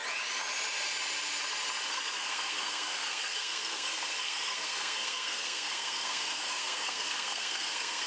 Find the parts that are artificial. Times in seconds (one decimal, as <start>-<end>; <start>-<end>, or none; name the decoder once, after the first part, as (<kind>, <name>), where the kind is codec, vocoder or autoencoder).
1.9-8.1 (codec, SNAC)